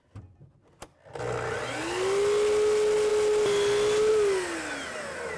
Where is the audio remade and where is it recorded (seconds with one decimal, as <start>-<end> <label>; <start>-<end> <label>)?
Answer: 0.0-5.4 recorded